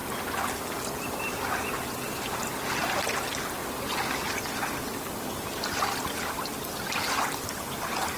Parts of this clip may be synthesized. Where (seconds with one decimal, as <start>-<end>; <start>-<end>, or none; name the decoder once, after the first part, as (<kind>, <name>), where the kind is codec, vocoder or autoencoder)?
none

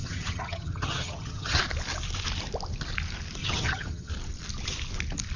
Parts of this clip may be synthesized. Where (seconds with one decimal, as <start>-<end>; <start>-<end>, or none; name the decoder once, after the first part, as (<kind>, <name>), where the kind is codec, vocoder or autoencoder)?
0.0-1.6 (vocoder, HiFi-GAN); 3.4-4.1

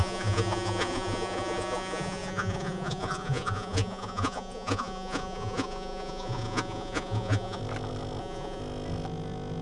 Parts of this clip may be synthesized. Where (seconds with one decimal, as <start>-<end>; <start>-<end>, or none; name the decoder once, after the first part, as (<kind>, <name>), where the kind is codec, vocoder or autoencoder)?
0.0-7.6 (vocoder, Vocos); 8.2-8.6

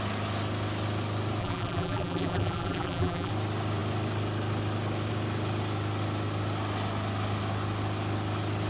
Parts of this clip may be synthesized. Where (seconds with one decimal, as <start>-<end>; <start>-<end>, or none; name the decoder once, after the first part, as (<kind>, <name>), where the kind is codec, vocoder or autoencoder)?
1.4-3.3 (vocoder, BigVGAN v2)

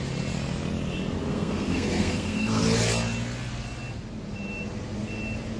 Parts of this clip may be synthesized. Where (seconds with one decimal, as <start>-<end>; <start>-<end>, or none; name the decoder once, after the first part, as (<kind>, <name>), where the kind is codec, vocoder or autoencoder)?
1.3-2.6 (codec, SNAC)

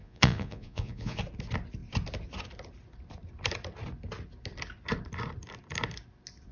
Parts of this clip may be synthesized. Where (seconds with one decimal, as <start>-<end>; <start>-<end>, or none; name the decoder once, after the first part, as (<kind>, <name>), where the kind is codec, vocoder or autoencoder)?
0.0-1.2 (vocoder, Vocos)

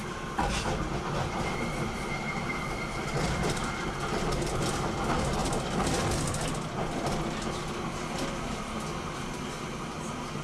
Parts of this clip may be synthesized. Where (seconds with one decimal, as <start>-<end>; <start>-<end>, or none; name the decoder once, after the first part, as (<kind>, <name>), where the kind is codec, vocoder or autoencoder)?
0.0-4.7 (vocoder, BigVGAN v2)